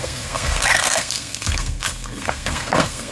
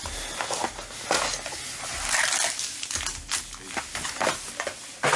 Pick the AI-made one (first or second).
first